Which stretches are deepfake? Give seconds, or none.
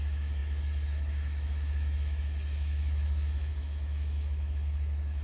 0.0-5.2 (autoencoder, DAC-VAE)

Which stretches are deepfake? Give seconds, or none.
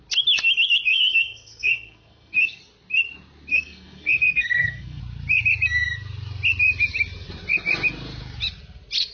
0.9-2.6 (codec, SNAC); 3.5-5.0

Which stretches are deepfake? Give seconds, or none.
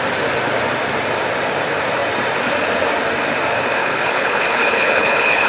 3.8-5.5 (codec, HILCodec)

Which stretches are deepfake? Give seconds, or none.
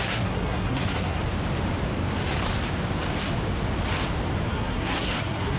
0.0-1.2 (codec, SNAC); 4.5-5.6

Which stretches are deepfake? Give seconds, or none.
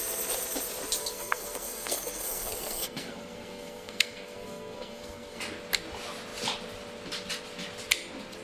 1.0-5.4 (codec, SNAC)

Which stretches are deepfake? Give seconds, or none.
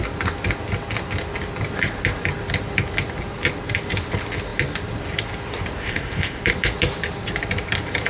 5.8-6.4 (codec, ZipCodec)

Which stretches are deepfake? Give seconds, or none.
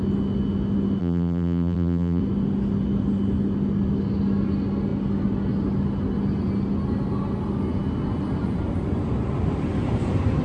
1.0-2.2 (vocoder, BigVGAN v2)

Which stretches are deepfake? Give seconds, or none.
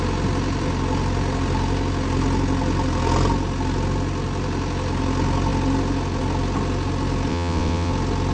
7.3-7.9 (vocoder, WaveNeXt)